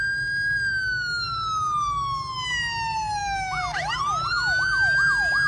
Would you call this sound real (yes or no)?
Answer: yes